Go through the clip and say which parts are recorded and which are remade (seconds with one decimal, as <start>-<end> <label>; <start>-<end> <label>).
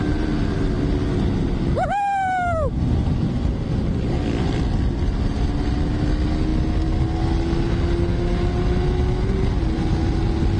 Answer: 0.0-10.6 recorded